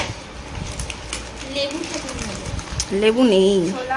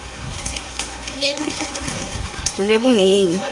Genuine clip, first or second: first